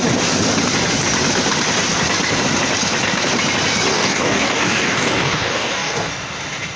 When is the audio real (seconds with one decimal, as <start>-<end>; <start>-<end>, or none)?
0.0-3.9; 6.1-6.8